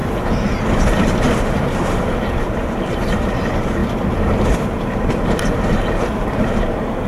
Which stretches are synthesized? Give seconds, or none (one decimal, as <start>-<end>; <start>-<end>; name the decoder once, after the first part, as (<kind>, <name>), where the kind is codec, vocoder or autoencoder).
0.8-3.8 (vocoder, BigVGAN v2); 5.4-7.1